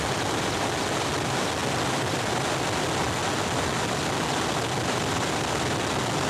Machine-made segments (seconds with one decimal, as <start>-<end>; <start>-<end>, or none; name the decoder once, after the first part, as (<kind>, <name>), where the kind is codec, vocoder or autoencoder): none